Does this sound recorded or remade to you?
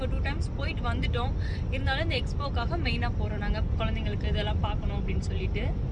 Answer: recorded